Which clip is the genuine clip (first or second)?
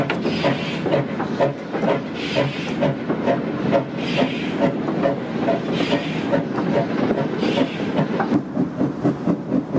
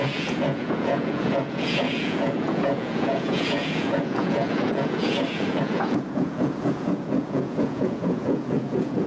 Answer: first